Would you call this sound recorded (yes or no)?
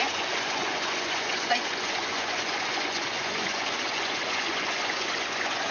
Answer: no